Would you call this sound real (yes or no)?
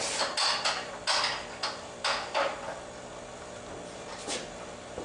yes